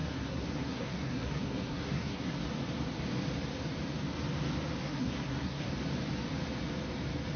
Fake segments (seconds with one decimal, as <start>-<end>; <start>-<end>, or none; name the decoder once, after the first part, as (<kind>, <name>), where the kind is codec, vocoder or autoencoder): 0.0-2.4 (codec, SNAC); 4.8-5.7